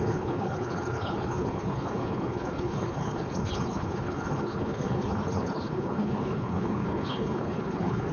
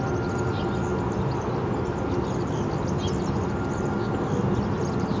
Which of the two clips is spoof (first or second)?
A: first